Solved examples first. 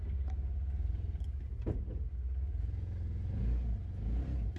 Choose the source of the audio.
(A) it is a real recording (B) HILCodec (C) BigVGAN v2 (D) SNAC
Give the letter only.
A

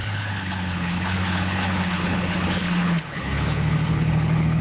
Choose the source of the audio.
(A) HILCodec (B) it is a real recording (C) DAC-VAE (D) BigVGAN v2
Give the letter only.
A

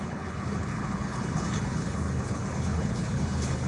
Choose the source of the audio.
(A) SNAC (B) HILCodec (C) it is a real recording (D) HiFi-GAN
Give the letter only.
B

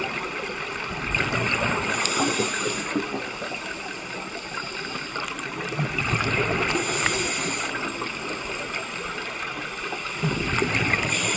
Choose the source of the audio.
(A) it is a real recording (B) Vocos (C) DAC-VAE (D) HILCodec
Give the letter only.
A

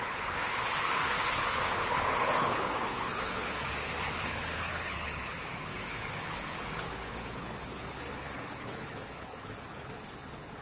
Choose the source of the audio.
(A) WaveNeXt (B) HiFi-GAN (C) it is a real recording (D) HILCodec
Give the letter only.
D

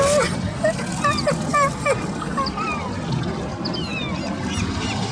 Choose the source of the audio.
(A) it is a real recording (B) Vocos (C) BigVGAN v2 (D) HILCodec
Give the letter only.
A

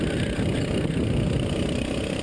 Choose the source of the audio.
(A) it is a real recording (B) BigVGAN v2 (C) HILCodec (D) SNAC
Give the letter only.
A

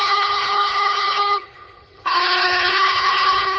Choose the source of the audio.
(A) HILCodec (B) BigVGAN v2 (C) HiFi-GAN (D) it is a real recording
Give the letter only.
A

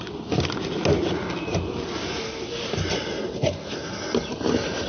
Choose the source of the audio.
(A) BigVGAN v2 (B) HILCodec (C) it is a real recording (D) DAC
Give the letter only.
C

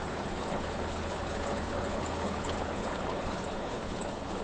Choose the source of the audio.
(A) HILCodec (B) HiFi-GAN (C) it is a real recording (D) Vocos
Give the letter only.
A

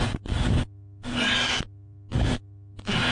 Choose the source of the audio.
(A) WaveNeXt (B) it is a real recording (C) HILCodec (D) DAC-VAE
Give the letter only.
B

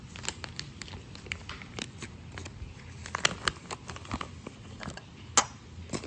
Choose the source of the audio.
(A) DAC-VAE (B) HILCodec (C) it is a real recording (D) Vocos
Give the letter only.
C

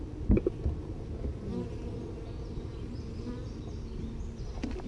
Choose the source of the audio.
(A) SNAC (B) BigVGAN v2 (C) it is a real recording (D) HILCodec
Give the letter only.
C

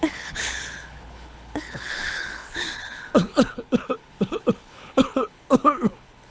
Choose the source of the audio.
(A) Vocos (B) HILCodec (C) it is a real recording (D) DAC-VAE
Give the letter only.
B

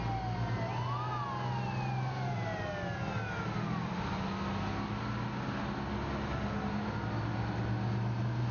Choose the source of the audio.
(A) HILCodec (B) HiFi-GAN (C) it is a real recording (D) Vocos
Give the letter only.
C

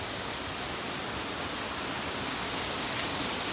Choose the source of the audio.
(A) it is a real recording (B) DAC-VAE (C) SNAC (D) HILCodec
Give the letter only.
A